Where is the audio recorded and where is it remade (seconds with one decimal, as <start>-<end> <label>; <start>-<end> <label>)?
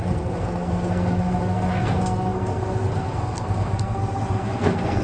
0.0-5.0 remade